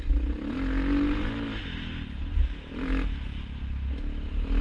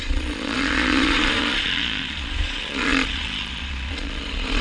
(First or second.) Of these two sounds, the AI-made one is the second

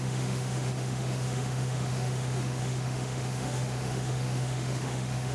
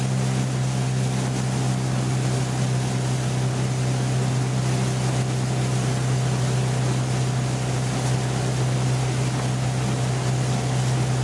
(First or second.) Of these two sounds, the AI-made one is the first